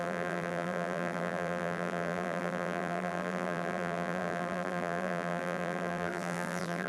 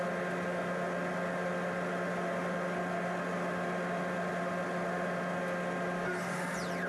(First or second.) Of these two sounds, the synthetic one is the first